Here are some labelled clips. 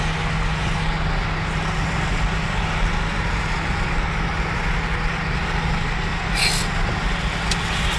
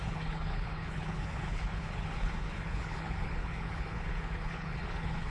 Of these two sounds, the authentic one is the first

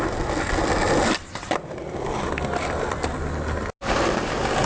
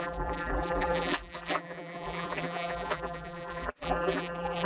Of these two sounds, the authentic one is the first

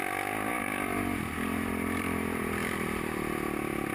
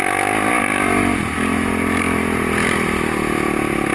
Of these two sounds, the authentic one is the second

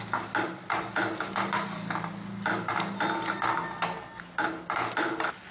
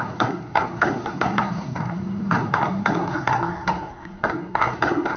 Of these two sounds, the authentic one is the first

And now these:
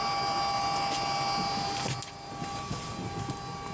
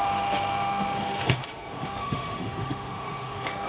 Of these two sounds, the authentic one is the first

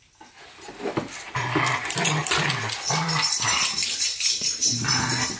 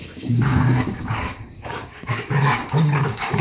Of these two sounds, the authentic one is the first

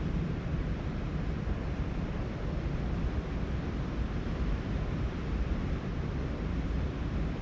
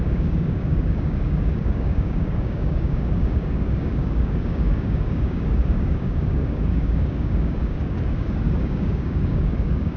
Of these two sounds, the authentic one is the first